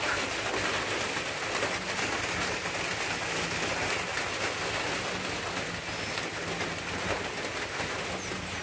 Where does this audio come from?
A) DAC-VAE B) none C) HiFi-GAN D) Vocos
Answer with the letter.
B